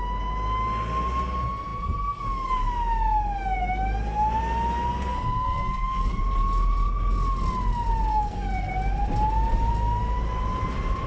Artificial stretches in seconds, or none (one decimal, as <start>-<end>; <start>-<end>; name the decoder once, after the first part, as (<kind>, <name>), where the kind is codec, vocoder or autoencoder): 5.1-6.2 (codec, SNAC); 8.1-8.7